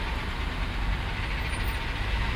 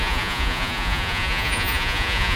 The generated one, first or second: second